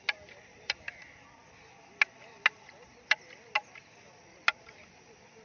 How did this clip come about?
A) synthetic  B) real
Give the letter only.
B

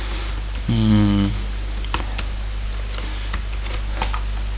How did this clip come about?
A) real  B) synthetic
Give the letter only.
A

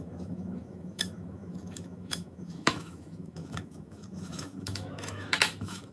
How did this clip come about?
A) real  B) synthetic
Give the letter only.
B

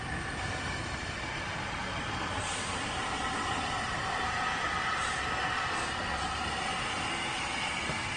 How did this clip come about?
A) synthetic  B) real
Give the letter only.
B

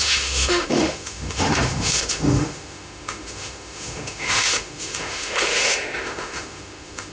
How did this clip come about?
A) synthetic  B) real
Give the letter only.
A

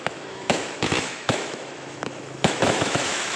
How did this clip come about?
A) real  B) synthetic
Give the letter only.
B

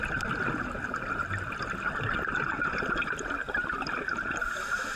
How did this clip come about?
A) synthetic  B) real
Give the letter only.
B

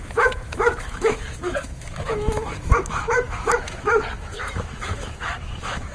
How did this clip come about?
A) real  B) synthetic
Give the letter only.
B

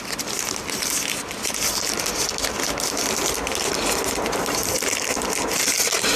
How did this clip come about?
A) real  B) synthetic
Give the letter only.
A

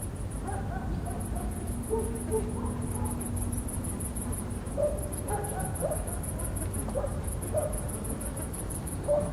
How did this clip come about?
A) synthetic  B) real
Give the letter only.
B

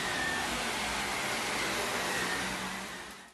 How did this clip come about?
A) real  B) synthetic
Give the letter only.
A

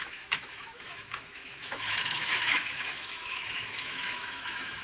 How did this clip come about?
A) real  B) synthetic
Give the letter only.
B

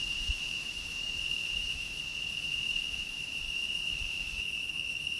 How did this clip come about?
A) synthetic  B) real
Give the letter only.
A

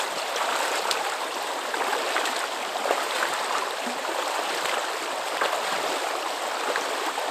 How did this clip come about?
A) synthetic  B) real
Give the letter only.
B